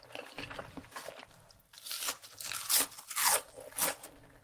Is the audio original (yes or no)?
yes